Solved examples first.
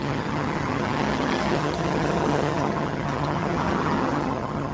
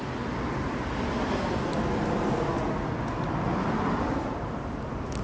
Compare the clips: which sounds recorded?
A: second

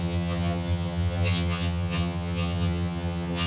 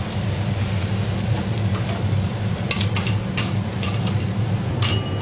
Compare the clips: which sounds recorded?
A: second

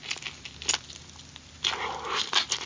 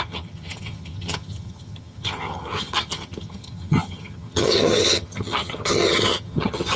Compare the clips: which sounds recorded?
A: first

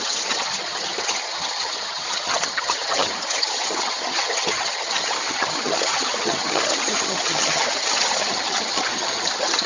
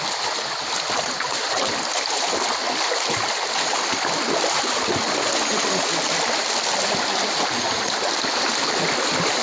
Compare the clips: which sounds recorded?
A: second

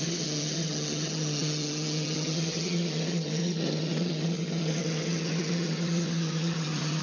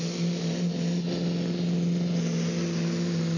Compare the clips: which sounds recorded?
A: second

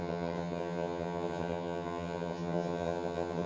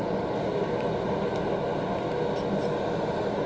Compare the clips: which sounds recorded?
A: second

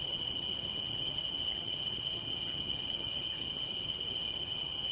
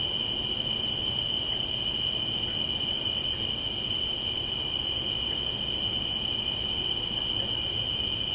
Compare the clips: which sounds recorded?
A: second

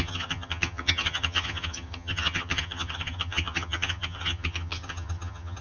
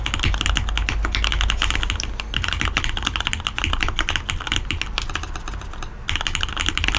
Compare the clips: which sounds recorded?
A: second